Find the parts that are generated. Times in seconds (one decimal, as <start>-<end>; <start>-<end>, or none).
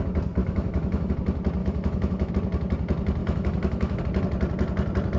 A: 0.4-1.1; 1.6-2.3; 3.2-4.0